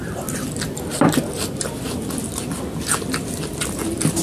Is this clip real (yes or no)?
yes